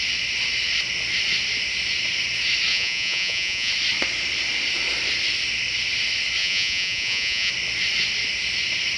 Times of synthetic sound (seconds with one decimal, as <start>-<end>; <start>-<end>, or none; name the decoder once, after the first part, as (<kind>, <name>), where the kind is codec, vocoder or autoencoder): 2.7-3.7 (vocoder, Vocos); 6.4-7.5